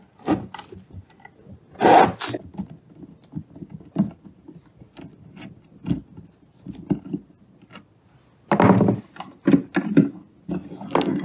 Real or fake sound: real